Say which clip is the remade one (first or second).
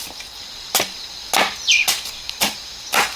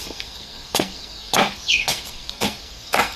second